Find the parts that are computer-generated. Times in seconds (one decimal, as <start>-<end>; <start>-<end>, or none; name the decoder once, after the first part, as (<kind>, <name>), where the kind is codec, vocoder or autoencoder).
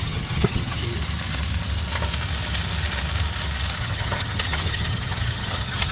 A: 0.0-0.8 (vocoder, HiFi-GAN); 3.8-5.9